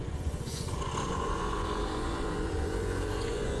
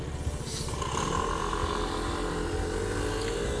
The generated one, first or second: first